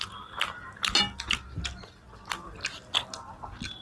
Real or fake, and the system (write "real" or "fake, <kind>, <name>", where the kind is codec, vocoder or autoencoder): real